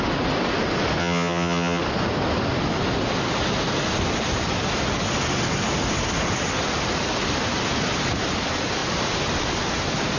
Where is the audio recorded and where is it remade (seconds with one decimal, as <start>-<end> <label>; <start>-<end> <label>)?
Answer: 0.0-1.0 recorded; 1.0-1.8 remade; 1.8-10.2 recorded